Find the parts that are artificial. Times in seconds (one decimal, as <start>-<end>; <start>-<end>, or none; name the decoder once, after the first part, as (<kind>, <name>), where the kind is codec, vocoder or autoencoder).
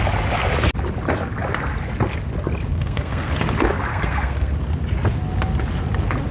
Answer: 2.7-3.3 (codec, SNAC); 3.9-4.5